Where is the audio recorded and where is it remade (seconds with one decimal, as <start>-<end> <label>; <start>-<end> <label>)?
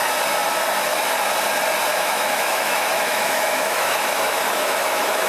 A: 0.0-1.9 recorded; 1.9-5.3 remade